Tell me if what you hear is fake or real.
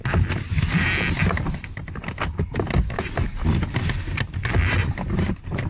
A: real